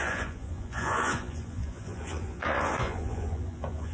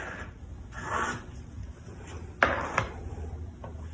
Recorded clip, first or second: second